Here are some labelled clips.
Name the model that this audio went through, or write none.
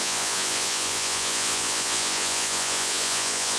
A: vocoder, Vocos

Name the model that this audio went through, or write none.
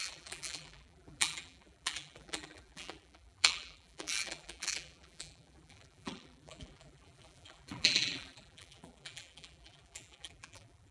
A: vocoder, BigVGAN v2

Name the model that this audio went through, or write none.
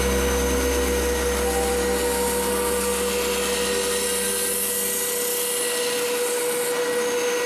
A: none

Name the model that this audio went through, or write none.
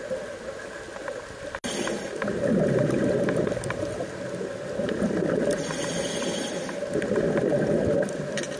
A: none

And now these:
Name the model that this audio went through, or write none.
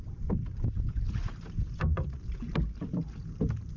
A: vocoder, BigVGAN v2